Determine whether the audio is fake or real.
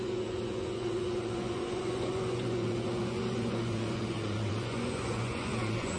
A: fake